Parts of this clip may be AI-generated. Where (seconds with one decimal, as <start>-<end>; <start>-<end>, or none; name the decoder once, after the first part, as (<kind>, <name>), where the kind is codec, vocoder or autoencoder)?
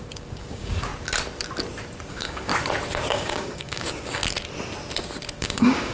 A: 0.0-0.9 (codec, DAC); 2.1-2.5; 3.1-4.2; 5.4-5.9